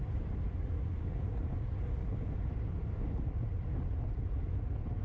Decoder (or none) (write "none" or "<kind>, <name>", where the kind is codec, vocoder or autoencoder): none